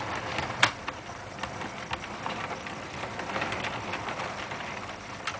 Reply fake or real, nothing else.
real